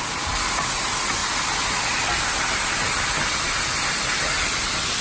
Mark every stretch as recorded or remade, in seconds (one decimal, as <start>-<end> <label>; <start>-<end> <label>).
0.0-5.0 recorded